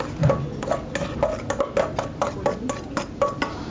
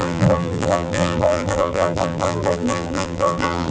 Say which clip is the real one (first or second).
first